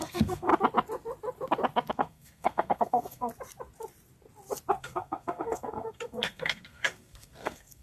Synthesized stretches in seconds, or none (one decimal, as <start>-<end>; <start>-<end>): 0.0-0.5; 1.9-3.3; 4.8-7.8